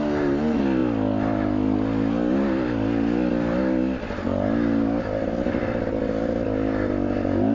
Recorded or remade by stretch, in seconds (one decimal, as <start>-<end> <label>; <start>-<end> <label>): 0.0-7.5 recorded